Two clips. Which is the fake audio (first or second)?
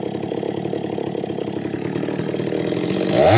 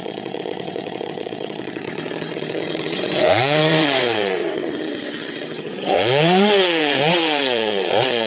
second